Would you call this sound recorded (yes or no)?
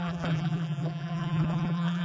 no